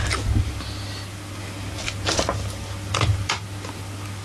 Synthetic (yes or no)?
no